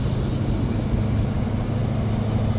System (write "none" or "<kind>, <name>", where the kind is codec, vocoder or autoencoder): none